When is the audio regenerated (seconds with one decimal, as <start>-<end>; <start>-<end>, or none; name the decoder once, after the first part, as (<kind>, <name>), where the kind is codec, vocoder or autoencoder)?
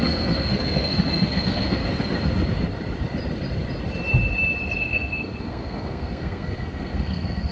0.0-1.8 (codec, SNAC); 4.8-7.5